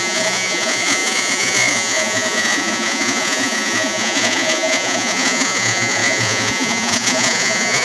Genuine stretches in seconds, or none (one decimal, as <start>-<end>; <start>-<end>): none